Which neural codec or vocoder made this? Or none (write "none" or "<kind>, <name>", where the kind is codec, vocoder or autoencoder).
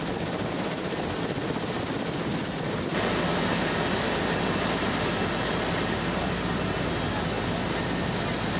none